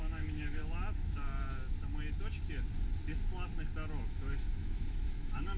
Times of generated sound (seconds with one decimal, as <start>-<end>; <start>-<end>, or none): 0.0-0.6; 4.0-5.6